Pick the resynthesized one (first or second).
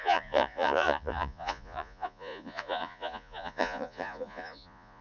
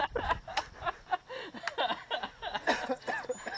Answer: first